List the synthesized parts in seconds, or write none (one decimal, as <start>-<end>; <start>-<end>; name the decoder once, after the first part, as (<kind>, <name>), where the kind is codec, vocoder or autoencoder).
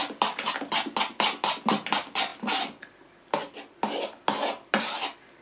none